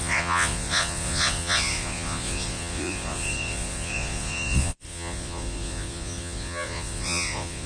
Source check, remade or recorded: remade